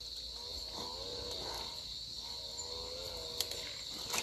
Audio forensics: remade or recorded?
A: recorded